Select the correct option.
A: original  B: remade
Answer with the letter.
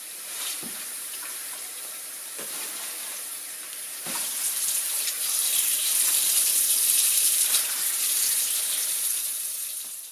B